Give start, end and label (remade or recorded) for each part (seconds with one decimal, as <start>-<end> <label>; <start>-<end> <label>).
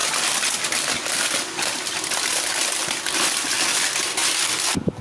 0.0-4.2 remade; 4.2-5.0 recorded